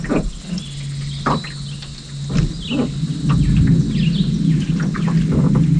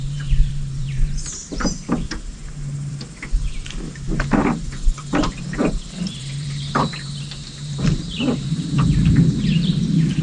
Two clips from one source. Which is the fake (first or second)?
second